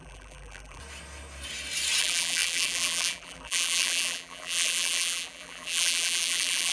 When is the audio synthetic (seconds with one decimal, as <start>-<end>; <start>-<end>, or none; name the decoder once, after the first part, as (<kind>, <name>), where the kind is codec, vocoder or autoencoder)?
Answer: 0.0-0.8 (vocoder, BigVGAN v2); 2.0-6.7